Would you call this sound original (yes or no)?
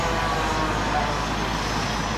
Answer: yes